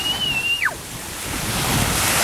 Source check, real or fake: real